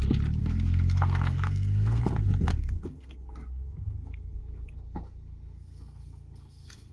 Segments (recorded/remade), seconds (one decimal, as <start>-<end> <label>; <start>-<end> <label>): 0.0-0.4 recorded; 0.4-2.0 remade; 2.0-2.5 recorded; 2.5-6.9 remade